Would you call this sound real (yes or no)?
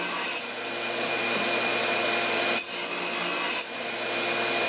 yes